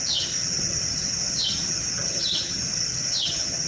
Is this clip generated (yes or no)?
yes